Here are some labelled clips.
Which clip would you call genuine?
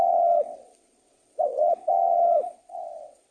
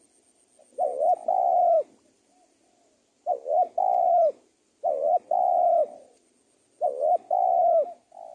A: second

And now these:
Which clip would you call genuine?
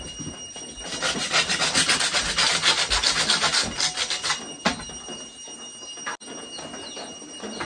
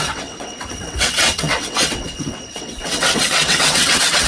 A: first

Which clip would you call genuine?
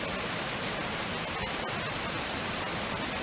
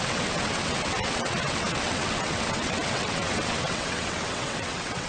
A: first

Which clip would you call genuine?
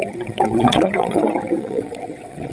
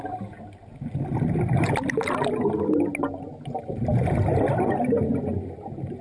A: second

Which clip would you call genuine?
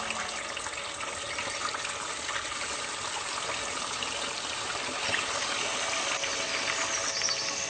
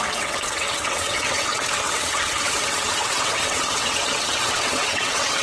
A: first